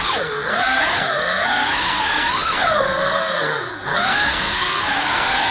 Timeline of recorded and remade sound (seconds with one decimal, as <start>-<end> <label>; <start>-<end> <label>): 0.0-5.5 remade